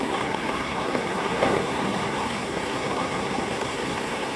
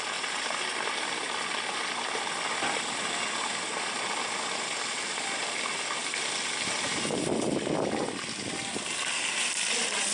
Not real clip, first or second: first